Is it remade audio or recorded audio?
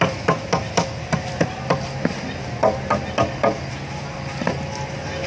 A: recorded